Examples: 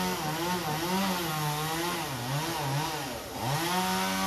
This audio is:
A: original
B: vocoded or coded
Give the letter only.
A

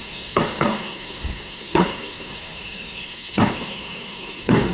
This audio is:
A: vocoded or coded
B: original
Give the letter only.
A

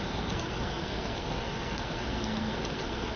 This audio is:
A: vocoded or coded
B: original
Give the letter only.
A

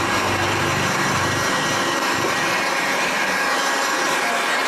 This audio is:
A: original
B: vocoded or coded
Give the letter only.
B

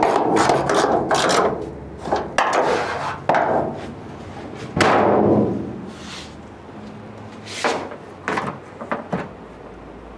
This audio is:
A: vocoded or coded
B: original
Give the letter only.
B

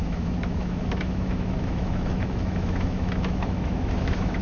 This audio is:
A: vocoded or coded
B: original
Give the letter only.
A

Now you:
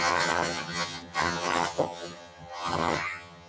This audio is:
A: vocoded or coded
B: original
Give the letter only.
A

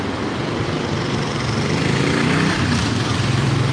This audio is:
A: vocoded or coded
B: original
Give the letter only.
A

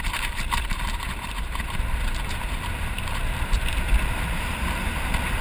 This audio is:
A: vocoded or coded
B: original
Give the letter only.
A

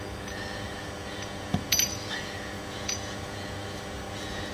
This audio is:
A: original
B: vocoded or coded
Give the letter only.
B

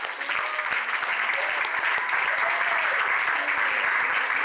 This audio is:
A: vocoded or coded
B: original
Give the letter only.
B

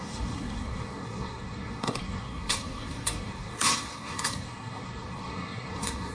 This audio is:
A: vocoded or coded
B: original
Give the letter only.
A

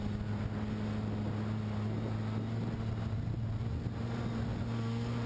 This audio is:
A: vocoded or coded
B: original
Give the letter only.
B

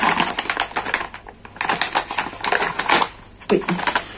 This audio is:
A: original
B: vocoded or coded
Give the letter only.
A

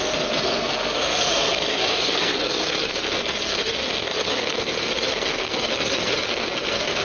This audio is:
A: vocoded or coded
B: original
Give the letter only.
A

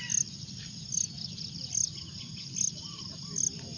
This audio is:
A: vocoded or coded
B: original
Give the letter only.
B